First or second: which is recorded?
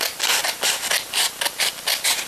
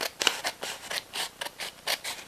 first